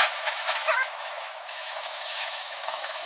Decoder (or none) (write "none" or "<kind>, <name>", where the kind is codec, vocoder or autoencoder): autoencoder, DAC-VAE